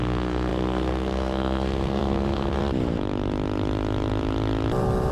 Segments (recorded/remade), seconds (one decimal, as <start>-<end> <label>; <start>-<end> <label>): 0.0-2.6 remade; 2.6-5.1 recorded